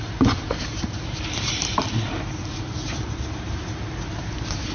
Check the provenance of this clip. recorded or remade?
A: remade